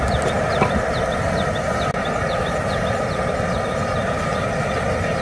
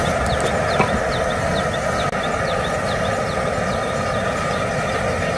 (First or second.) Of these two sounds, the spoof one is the first